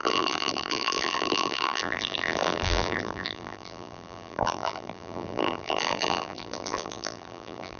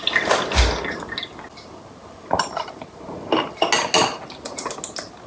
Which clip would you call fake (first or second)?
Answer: first